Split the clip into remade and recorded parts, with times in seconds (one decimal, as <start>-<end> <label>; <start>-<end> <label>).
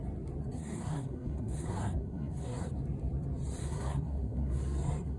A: 0.0-0.4 recorded; 0.4-2.7 remade; 2.7-3.6 recorded; 3.6-5.2 remade